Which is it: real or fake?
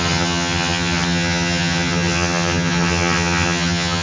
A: fake